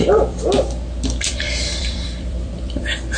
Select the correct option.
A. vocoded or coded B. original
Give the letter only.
A